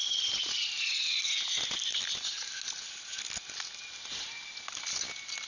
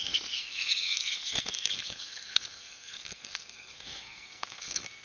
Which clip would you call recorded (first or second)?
first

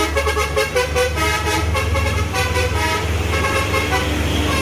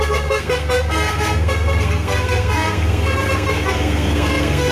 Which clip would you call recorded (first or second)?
first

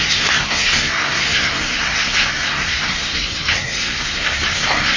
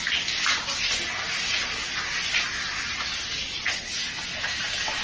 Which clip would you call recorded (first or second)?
second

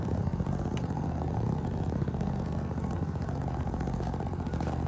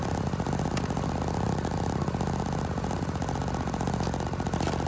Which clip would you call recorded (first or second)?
second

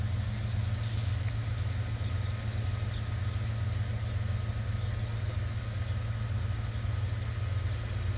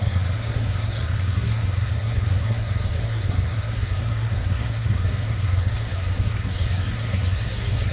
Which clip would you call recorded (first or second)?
first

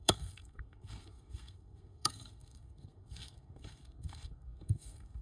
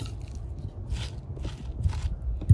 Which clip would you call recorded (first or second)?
second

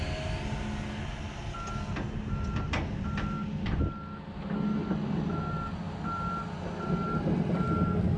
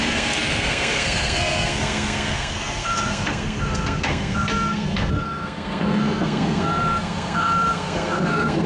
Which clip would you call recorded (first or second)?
first